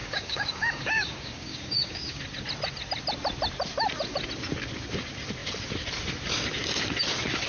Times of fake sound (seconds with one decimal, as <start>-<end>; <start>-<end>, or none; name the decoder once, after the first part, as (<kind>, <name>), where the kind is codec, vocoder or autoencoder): 0.0-2.2 (codec, DAC)